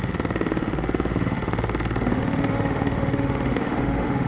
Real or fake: fake